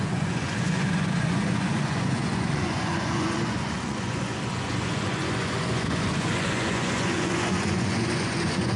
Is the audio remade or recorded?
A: remade